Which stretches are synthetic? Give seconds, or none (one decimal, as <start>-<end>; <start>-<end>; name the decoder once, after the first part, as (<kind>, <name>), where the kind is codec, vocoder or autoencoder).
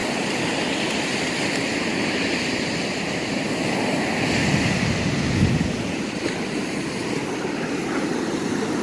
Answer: 0.0-3.7 (vocoder, BigVGAN v2); 4.4-6.0; 7.0-7.8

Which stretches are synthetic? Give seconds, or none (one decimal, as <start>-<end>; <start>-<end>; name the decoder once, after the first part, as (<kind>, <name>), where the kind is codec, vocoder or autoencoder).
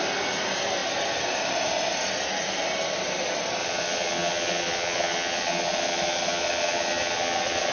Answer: 3.6-7.7 (vocoder, WaveNeXt)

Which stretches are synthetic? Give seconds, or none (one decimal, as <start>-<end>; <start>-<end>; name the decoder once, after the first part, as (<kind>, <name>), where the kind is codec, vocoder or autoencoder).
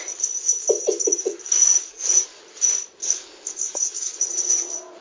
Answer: 0.6-2.4 (codec, DAC); 3.0-4.3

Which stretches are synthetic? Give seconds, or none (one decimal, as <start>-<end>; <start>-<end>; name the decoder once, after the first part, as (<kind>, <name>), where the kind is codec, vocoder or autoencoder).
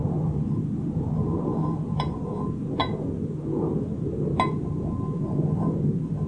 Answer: none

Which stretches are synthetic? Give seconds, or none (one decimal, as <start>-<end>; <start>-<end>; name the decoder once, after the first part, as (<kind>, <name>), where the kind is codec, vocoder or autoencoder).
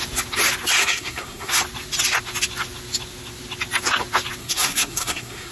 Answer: 0.8-1.5 (codec, SNAC); 4.4-5.5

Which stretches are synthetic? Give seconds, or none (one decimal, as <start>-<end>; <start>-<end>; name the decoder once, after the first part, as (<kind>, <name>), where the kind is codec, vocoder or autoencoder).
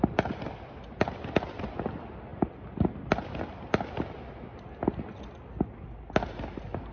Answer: none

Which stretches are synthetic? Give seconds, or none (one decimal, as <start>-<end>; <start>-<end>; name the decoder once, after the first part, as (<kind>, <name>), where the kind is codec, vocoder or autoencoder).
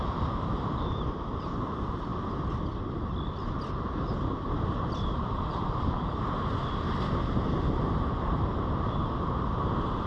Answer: 0.0-2.1 (vocoder, BigVGAN v2); 3.8-10.1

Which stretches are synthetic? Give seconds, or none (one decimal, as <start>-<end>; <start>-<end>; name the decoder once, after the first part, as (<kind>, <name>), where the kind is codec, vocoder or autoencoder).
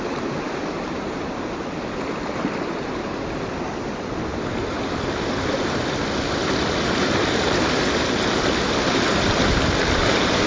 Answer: none